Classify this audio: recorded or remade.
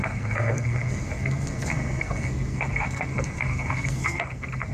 remade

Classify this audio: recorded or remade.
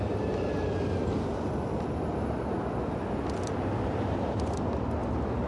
recorded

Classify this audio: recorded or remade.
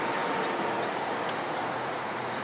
remade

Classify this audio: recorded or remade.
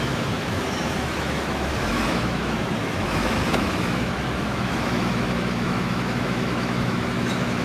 remade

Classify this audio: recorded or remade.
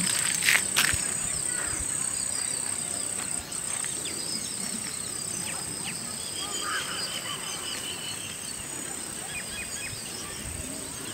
recorded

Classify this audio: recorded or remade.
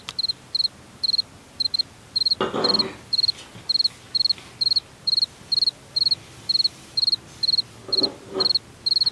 recorded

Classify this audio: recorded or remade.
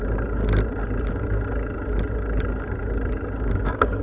recorded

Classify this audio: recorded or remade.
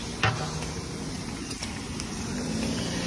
recorded